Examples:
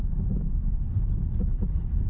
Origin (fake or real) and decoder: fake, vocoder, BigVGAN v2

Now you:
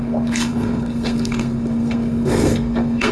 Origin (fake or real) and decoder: fake, codec, SNAC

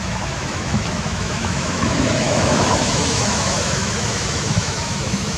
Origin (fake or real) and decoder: fake, autoencoder, DAC-VAE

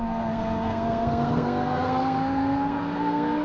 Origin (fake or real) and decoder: fake, codec, SNAC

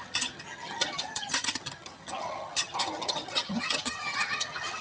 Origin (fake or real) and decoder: fake, vocoder, HiFi-GAN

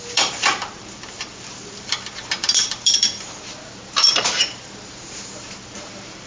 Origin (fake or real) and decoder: fake, vocoder, BigVGAN v2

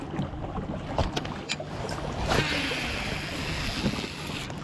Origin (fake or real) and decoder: real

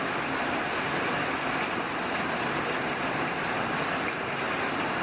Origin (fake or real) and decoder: real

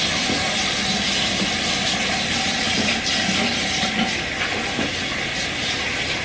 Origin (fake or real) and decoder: real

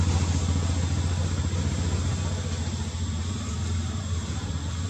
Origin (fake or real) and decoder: real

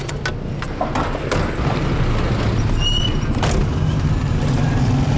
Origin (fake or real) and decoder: real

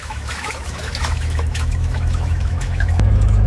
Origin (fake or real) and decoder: fake, autoencoder, DAC-VAE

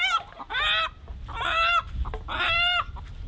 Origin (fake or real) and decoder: real